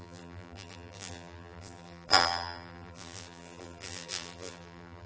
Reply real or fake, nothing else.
fake